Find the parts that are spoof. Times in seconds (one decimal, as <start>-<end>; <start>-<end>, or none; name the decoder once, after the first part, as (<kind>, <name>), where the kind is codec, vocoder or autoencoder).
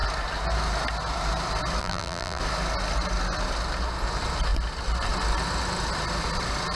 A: 1.8-2.4 (vocoder, BigVGAN v2)